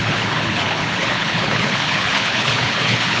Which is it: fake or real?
fake